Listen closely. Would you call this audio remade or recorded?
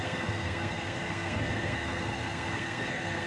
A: remade